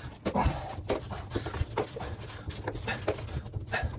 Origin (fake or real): real